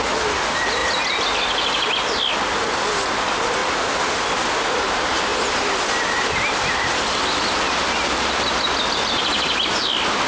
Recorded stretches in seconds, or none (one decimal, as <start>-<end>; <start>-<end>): 0.0-10.3